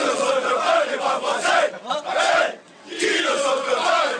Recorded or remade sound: remade